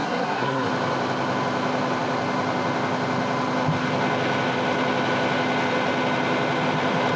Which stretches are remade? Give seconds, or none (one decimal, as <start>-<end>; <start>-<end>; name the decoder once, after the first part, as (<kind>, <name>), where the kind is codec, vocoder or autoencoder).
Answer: 0.0-0.7 (codec, SNAC)